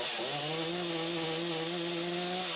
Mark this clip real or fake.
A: real